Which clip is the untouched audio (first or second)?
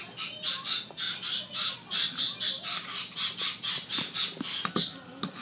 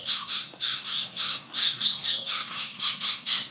first